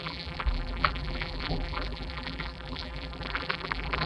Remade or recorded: remade